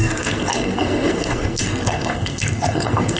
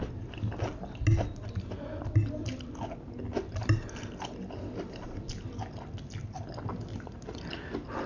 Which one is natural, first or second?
second